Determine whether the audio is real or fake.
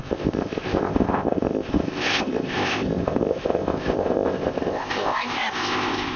fake